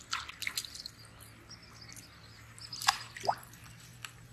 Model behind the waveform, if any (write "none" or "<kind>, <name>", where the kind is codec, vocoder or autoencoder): none